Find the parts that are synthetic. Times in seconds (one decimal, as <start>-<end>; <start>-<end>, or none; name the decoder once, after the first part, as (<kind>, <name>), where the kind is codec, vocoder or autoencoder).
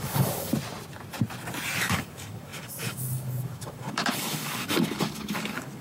0.0-0.5 (codec, DAC); 1.8-5.8